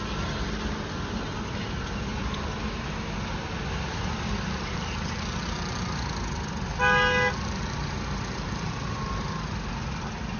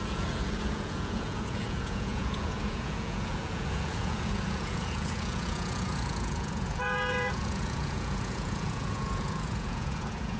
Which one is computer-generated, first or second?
second